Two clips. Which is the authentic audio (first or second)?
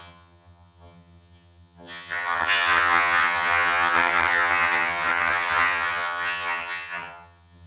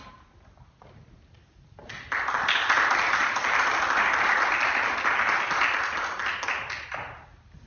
second